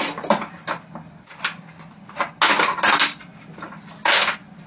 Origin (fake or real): real